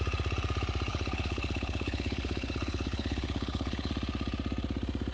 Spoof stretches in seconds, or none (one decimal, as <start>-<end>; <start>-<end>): 0.9-3.9